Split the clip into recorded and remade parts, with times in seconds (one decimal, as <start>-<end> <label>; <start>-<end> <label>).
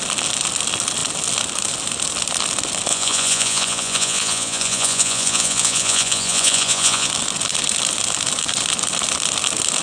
0.0-2.9 recorded; 2.9-7.1 remade; 7.1-9.8 recorded